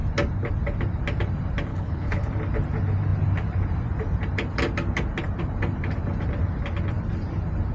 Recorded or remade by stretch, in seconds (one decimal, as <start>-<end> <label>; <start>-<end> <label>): 0.0-1.7 recorded; 1.7-2.3 remade; 2.3-7.7 recorded